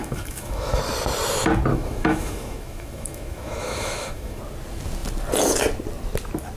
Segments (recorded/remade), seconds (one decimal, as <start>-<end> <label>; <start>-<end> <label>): 0.0-0.8 remade; 0.8-1.7 recorded; 1.7-4.4 remade; 4.4-6.6 recorded